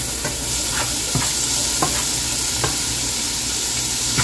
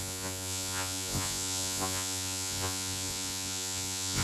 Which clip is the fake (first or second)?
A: second